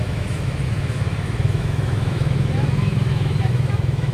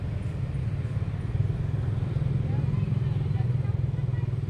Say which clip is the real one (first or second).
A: second